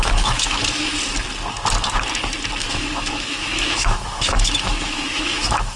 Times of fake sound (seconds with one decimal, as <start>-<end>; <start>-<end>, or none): 0.0-0.6; 2.6-5.8